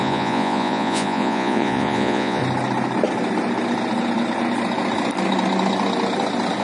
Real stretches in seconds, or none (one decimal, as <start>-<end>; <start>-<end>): 2.4-6.6